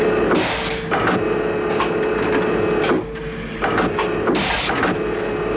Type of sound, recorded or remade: recorded